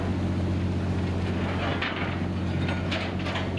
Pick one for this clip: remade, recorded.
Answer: recorded